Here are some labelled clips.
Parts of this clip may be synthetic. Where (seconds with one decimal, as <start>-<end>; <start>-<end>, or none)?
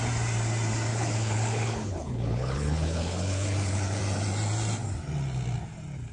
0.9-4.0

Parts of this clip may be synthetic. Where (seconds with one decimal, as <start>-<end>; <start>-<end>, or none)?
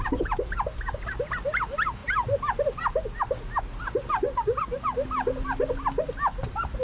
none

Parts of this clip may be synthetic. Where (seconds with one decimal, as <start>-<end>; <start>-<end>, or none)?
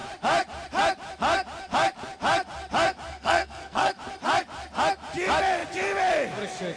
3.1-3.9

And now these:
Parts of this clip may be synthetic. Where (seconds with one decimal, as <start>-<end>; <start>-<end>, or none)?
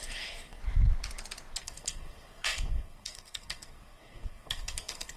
0.0-0.6; 1.6-5.2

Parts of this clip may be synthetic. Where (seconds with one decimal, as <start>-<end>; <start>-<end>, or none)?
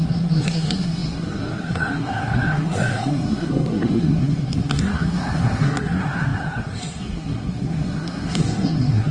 0.0-9.1